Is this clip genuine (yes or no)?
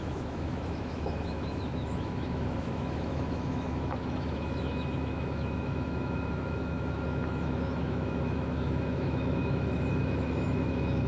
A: no